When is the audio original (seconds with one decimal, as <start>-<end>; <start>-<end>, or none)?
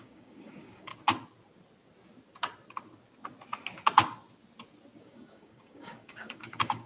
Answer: 0.9-5.0